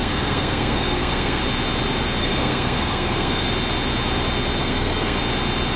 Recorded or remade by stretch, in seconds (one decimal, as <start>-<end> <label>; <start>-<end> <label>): 0.0-1.4 remade; 1.4-2.2 recorded; 2.2-3.5 remade; 3.5-4.6 recorded; 4.6-5.2 remade; 5.2-5.8 recorded